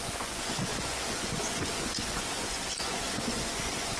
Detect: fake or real fake